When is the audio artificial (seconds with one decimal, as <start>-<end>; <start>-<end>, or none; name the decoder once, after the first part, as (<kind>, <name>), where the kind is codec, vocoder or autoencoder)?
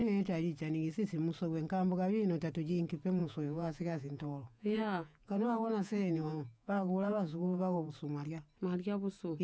3.2-7.9 (vocoder, Vocos)